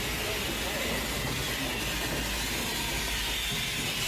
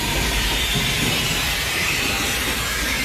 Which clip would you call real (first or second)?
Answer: first